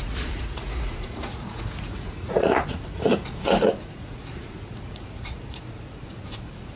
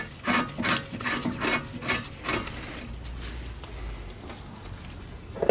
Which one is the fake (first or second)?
first